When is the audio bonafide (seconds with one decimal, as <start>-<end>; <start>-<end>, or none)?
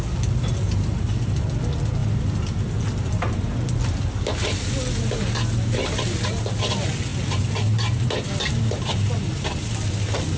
0.0-10.4